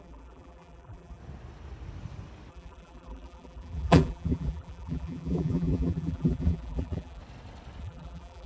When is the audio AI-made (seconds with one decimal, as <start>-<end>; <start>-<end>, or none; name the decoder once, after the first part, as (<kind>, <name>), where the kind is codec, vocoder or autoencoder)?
0.0-1.2 (vocoder, BigVGAN v2); 2.5-7.2; 7.8-8.5